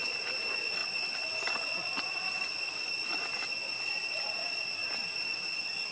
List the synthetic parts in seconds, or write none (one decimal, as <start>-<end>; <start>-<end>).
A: none